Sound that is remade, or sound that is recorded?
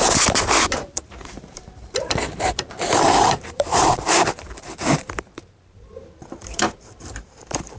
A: remade